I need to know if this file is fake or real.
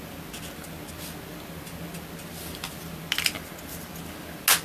real